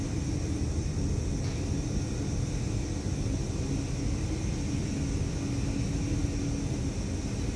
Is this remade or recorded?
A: recorded